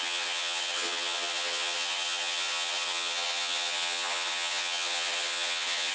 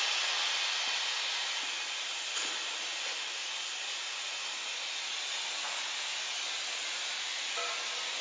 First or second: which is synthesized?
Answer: first